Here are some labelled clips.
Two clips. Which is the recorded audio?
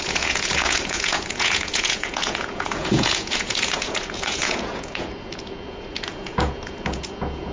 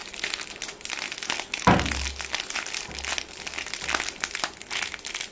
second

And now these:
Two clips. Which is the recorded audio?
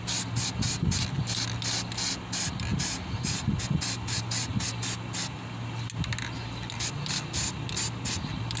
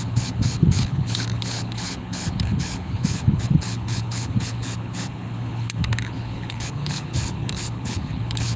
first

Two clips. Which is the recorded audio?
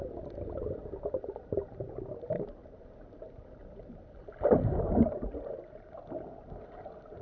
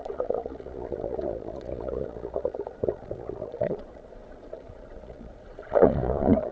first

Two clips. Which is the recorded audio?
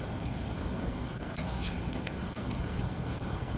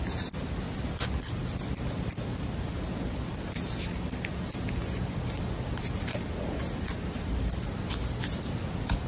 second